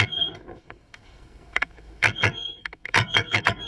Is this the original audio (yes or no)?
no